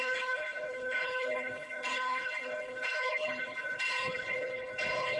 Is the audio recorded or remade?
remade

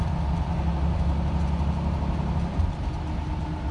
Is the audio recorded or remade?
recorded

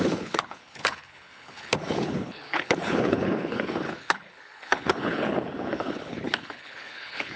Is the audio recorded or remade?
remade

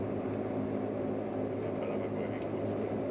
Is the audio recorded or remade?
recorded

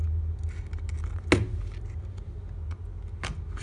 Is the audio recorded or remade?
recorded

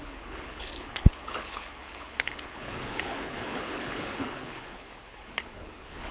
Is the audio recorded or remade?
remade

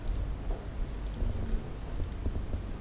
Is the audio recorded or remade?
recorded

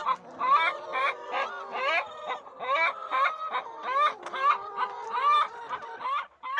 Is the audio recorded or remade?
recorded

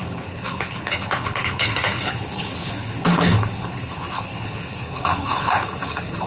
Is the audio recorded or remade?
remade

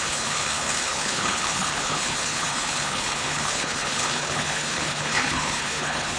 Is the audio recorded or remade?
remade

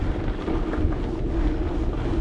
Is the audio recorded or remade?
recorded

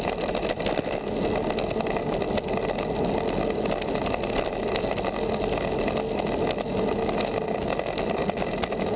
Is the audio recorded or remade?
recorded